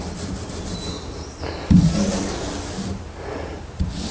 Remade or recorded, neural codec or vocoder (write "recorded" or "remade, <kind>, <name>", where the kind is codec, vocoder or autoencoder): recorded